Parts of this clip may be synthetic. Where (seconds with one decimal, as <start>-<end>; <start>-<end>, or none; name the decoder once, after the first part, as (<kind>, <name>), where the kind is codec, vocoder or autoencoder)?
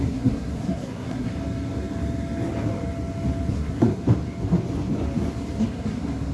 0.0-1.3 (codec, SNAC); 3.5-4.0; 5.6-6.3